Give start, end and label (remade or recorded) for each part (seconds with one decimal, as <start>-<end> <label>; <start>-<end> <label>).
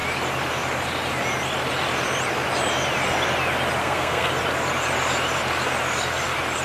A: 0.0-3.8 recorded; 3.8-4.3 remade; 4.3-6.6 recorded